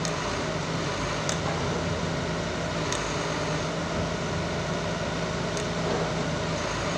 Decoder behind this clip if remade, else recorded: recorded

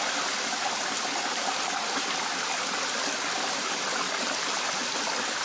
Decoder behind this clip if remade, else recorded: recorded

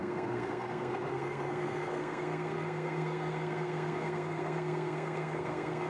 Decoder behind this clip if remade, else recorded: remade, codec, SNAC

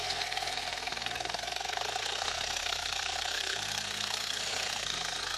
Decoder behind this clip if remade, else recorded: remade, codec, SNAC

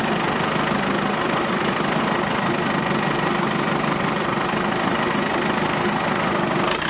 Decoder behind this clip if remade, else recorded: recorded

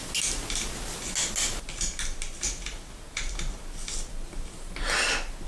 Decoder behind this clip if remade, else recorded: recorded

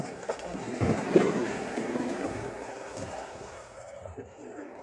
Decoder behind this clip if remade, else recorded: remade, codec, SNAC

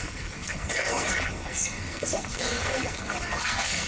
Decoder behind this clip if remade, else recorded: remade, codec, SNAC